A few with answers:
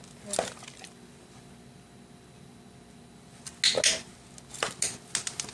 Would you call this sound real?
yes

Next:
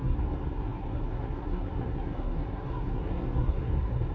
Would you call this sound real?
no